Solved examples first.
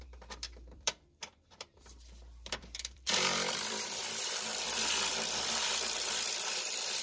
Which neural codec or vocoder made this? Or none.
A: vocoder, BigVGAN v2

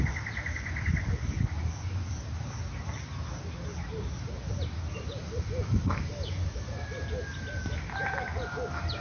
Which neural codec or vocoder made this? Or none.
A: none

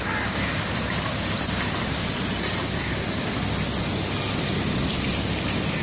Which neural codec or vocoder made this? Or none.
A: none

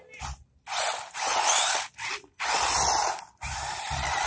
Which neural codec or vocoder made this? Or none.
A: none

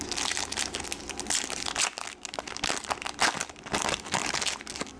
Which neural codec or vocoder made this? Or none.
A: none